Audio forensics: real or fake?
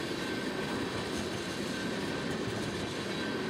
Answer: real